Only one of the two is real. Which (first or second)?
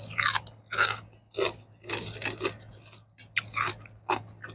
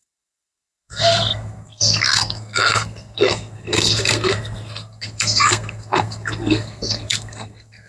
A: first